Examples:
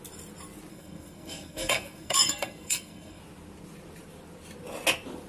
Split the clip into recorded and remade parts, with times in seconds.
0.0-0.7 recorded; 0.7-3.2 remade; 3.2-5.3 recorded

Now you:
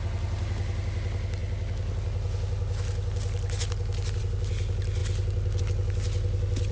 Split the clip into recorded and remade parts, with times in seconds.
0.0-6.7 recorded